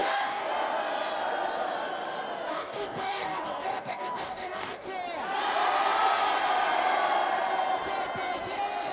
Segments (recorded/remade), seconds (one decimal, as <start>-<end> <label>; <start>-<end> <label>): 0.0-0.5 remade; 0.5-2.5 recorded; 2.5-4.9 remade; 4.9-8.9 recorded